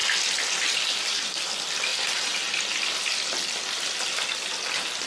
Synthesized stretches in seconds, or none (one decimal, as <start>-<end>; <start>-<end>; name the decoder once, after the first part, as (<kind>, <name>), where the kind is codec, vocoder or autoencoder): 0.5-1.9 (vocoder, BigVGAN v2)